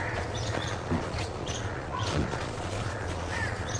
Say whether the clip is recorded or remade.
remade